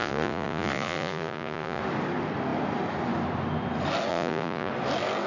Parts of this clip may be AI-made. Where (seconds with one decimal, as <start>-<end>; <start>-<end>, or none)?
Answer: 0.0-1.8; 4.1-4.7